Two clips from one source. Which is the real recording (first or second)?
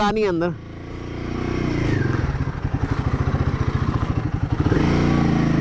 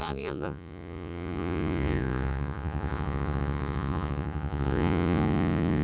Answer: first